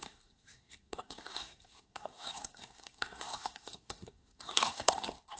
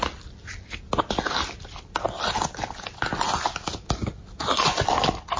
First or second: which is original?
second